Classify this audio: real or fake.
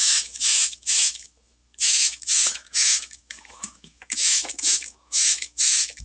fake